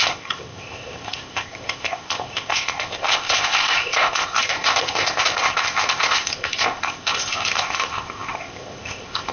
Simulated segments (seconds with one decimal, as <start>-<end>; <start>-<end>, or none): 0.0-9.3